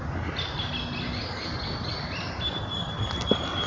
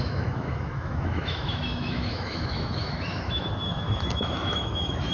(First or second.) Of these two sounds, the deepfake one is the second